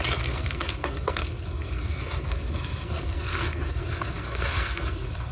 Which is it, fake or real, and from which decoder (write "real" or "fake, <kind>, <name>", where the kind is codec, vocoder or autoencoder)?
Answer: fake, codec, SNAC